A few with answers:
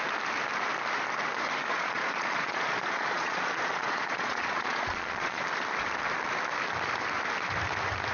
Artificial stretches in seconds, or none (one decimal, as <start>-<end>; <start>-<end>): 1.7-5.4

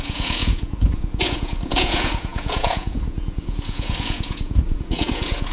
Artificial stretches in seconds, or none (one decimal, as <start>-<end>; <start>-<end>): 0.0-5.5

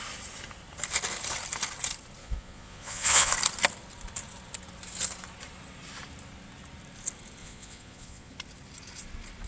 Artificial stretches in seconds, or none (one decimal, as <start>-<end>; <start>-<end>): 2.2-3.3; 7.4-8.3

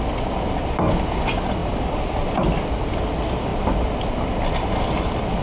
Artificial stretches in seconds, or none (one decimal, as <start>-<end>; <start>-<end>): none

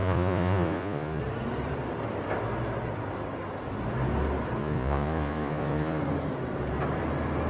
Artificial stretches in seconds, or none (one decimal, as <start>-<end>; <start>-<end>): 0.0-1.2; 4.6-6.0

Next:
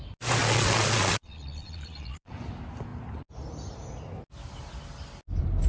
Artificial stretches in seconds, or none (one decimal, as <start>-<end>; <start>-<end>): 0.4-2.3

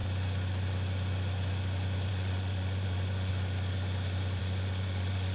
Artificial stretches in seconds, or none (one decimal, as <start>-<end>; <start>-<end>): 2.1-3.3; 4.4-5.3